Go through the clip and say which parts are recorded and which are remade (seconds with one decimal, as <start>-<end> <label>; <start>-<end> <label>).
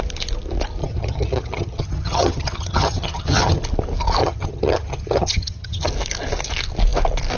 0.0-0.8 recorded; 0.8-3.6 remade; 3.6-4.2 recorded; 4.2-5.9 remade; 5.9-7.4 recorded